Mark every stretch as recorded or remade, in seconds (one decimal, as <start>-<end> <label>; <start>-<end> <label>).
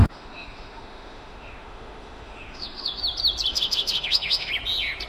0.0-3.0 remade; 3.0-3.5 recorded; 3.5-4.5 remade; 4.5-5.1 recorded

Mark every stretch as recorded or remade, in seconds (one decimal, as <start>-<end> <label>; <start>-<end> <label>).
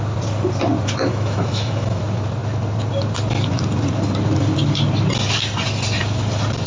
0.0-1.1 recorded; 1.1-2.0 remade; 2.0-6.7 recorded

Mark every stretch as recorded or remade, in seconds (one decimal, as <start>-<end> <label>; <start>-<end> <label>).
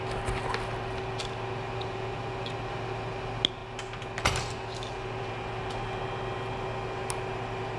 0.0-7.8 recorded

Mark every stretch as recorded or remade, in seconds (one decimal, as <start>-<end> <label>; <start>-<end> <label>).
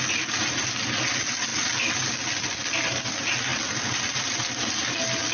0.0-5.3 recorded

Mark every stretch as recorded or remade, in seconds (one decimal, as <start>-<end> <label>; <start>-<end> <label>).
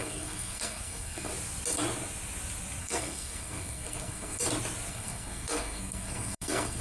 0.0-1.3 remade; 1.3-2.8 recorded; 2.8-4.4 remade; 4.4-4.9 recorded; 4.9-6.8 remade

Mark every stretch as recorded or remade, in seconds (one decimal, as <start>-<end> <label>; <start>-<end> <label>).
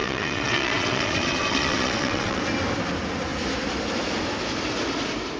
0.0-2.4 remade; 2.4-5.4 recorded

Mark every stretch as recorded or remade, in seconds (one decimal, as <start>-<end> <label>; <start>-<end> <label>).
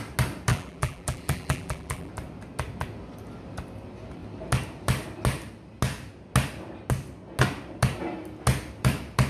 0.0-0.5 recorded; 0.5-2.1 remade; 2.1-9.3 recorded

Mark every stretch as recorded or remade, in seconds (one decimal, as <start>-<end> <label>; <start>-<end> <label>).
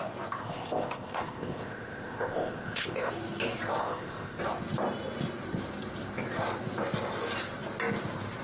0.0-0.4 recorded; 0.4-3.1 remade; 3.1-3.8 recorded; 3.8-4.4 remade; 4.4-8.4 recorded